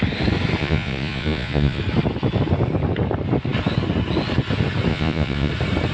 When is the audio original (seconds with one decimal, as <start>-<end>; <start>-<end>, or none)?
0.0-0.6; 1.8-4.9; 5.5-5.9